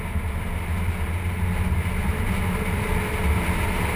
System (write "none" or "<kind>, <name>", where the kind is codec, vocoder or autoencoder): none